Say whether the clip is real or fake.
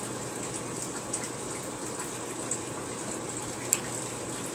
real